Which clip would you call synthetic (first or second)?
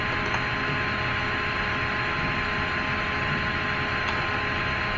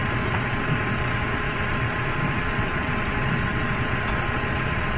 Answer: second